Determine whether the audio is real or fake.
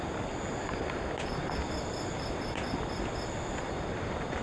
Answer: real